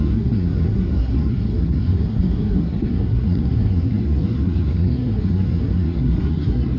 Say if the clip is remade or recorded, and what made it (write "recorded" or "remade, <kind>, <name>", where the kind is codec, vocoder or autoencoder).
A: remade, codec, SNAC